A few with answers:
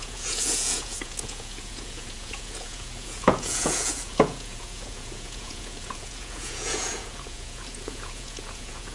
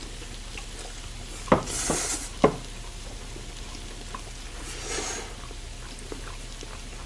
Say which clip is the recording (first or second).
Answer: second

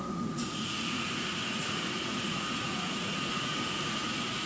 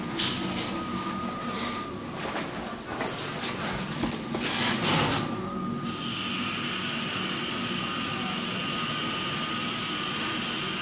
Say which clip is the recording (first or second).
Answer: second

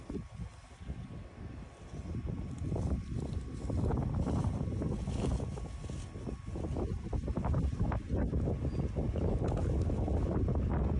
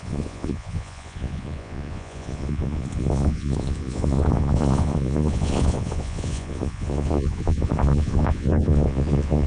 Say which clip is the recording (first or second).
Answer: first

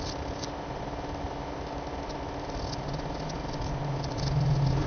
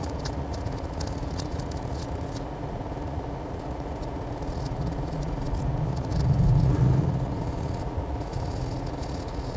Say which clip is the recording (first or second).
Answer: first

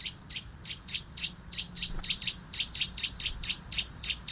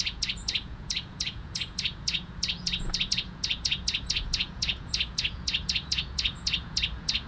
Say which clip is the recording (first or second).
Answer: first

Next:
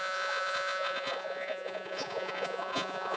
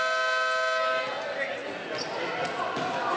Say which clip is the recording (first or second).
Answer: second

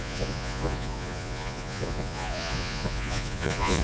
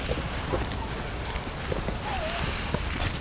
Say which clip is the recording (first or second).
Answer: second